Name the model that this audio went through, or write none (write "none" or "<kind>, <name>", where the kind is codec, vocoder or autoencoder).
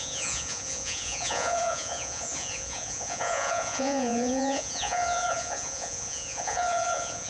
vocoder, Vocos